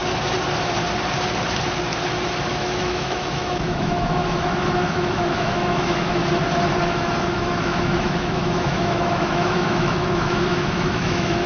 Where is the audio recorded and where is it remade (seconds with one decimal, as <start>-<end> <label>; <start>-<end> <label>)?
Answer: 0.0-2.5 recorded; 2.5-6.2 remade; 6.2-6.8 recorded; 6.8-11.5 remade